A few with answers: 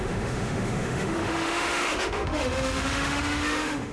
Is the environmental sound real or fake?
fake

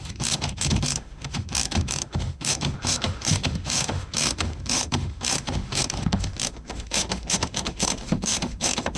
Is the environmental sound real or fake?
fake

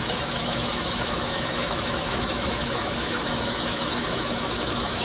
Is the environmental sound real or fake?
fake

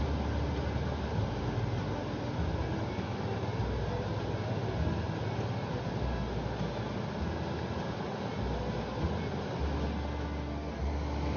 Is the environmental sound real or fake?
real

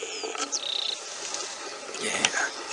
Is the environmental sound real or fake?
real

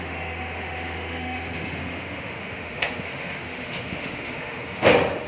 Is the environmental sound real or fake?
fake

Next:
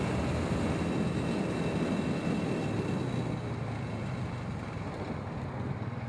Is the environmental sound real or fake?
real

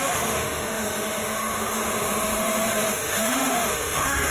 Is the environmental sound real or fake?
fake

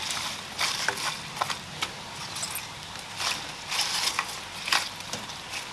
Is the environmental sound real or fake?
real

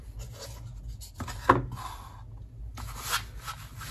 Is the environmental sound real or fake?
real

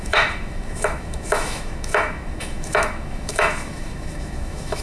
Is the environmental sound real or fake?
fake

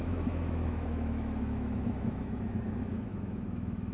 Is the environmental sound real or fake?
fake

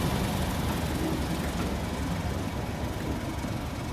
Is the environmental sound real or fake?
real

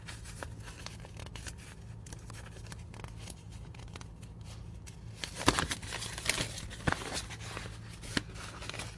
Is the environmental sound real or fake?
real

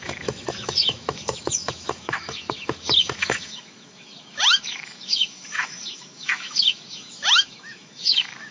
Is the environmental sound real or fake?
fake